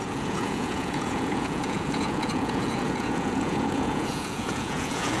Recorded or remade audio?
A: remade